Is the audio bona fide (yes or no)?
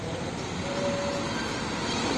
yes